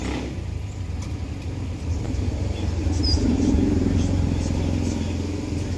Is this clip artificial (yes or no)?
no